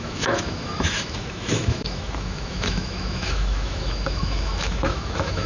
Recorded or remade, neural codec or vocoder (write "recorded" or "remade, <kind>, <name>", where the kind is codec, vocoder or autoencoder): remade, autoencoder, DAC-VAE